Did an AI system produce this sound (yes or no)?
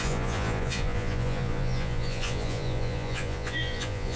yes